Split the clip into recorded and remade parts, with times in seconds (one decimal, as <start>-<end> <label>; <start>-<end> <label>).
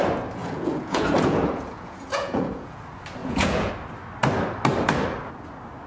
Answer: 0.0-0.4 recorded; 0.4-2.8 remade; 2.8-3.2 recorded; 3.2-3.7 remade; 3.7-5.9 recorded